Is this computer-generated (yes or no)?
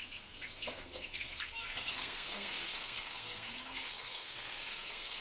yes